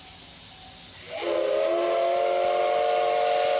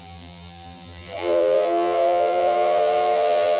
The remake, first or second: second